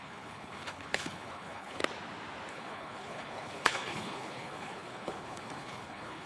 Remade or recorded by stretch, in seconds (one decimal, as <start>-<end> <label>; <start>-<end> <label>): 0.0-1.8 remade; 1.8-2.5 recorded; 2.5-6.3 remade